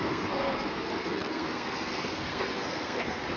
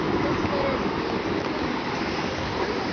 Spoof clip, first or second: first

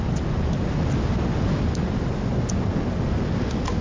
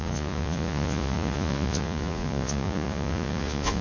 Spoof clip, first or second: second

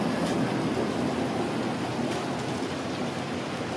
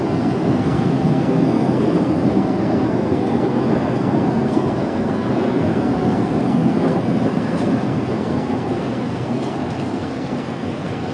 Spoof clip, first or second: second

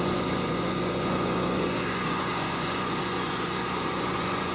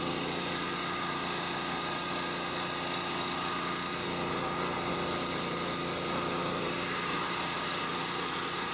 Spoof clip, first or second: first